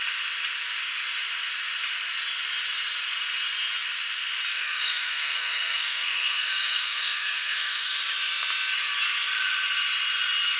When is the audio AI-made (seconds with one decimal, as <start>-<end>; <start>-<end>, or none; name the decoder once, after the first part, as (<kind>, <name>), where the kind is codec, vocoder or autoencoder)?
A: 4.5-8.0 (codec, SNAC)